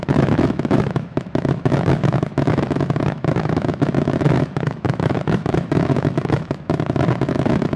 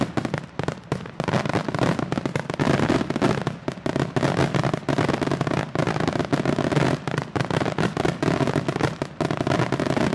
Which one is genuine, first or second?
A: second